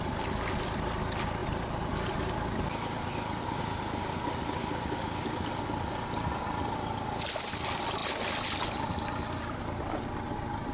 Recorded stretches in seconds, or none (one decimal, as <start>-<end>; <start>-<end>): 0.0-10.7